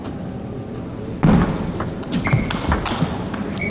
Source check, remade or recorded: recorded